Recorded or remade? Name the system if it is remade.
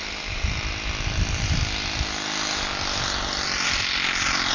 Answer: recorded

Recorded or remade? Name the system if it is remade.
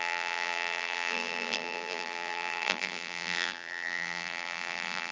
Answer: remade, vocoder, BigVGAN v2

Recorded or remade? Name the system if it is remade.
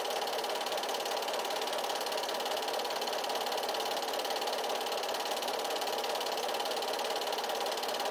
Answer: recorded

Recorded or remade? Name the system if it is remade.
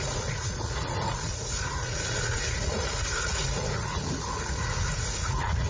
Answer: remade, vocoder, Vocos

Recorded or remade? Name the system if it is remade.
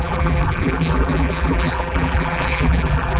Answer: remade, vocoder, BigVGAN v2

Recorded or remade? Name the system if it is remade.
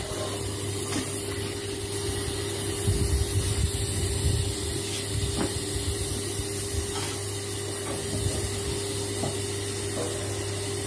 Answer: recorded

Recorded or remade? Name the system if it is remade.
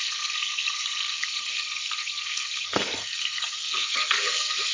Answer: remade, codec, SNAC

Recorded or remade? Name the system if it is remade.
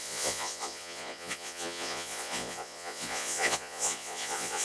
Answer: remade, vocoder, Vocos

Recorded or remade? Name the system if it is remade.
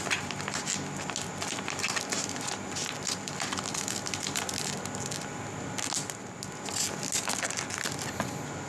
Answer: recorded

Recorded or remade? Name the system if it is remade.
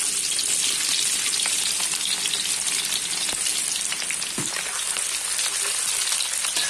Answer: recorded